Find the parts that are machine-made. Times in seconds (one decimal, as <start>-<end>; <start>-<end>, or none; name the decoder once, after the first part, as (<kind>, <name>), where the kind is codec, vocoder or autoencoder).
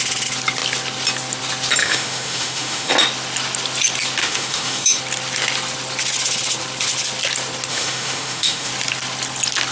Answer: 1.8-2.9 (autoencoder, DAC-VAE); 4.2-5.0; 7.7-8.7